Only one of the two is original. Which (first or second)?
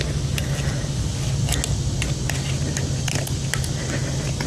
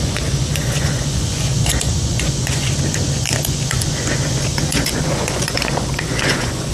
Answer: first